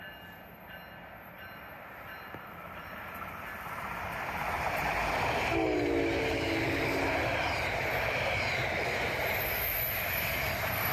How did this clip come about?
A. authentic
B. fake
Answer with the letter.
A